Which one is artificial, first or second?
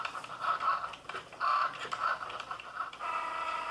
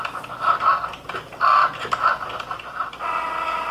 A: first